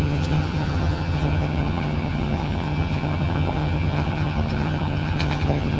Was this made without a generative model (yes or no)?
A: no